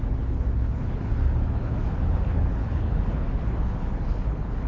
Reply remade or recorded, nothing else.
remade